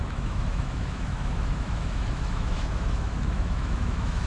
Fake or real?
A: fake